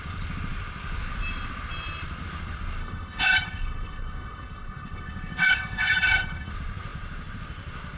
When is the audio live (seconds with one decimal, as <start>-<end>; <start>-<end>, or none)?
0.0-2.8; 6.5-8.0